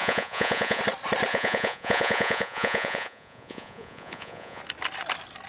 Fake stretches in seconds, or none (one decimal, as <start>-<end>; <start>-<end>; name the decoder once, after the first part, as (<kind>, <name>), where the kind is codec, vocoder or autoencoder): 0.0-0.8 (vocoder, Vocos); 1.3-4.6